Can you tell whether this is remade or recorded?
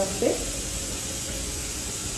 remade